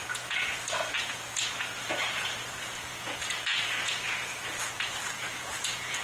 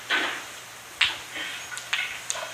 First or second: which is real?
second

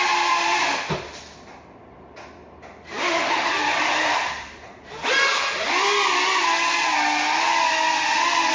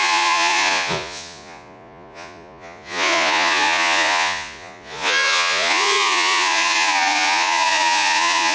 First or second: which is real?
first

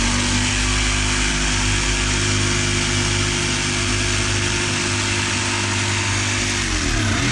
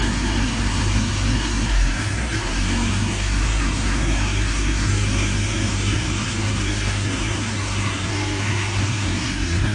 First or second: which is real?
first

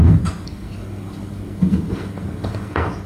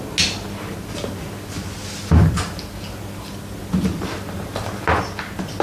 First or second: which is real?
second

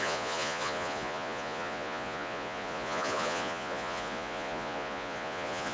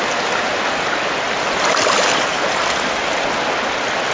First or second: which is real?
second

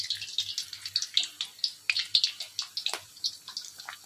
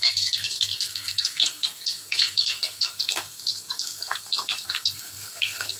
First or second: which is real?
first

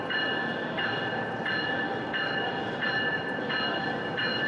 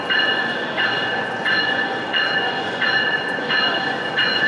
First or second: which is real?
first